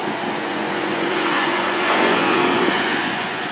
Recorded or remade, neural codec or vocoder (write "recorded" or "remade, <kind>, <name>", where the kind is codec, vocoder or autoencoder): remade, vocoder, Vocos